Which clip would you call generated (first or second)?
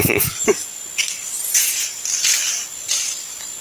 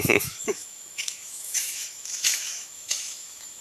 second